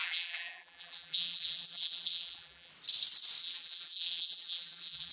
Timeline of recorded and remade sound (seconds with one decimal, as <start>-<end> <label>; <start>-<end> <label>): 0.0-2.7 remade; 2.7-3.4 recorded; 3.4-5.1 remade